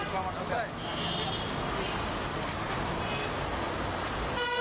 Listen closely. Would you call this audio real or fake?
real